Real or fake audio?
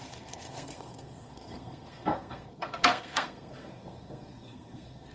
fake